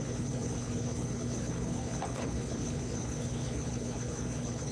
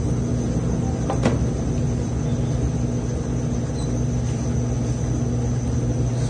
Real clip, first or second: second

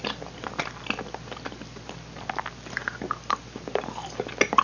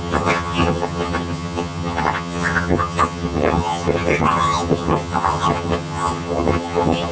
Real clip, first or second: first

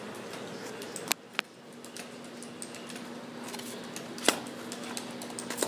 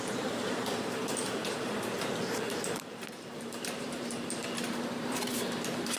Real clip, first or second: first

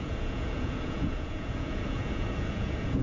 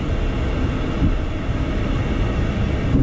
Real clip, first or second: second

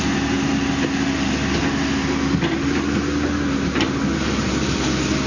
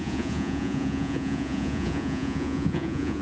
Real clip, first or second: first